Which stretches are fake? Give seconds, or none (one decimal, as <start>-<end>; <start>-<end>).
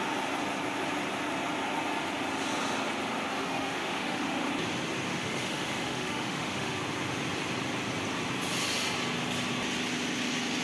3.3-4.5; 5.1-6.8